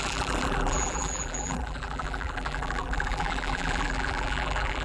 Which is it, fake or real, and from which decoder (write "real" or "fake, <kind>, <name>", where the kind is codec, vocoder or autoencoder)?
fake, vocoder, BigVGAN v2